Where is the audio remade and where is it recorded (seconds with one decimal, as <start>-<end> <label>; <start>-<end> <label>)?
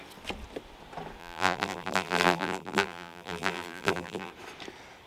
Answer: 0.0-1.2 recorded; 1.2-4.3 remade; 4.3-5.1 recorded